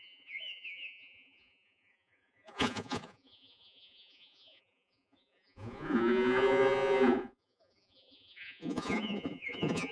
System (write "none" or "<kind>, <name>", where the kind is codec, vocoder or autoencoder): vocoder, Vocos